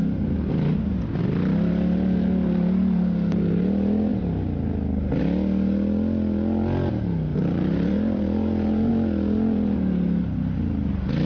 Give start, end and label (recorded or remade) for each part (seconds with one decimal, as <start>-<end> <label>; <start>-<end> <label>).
0.0-7.3 recorded; 7.3-8.9 remade; 8.9-11.3 recorded